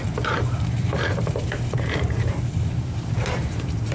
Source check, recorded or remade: remade